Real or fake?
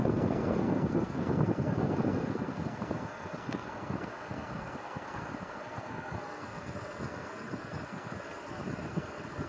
fake